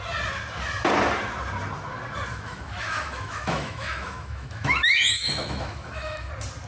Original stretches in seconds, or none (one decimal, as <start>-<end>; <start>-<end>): 0.0-2.3; 6.3-6.7